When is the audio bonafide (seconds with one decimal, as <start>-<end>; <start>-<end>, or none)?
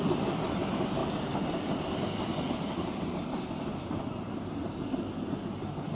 0.0-5.9